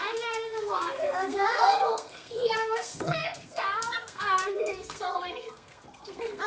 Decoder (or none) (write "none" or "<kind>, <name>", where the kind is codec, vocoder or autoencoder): codec, SNAC